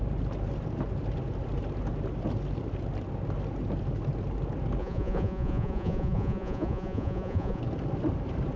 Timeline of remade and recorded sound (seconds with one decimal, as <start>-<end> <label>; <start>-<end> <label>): 0.0-4.8 recorded; 4.8-7.6 remade; 7.6-8.6 recorded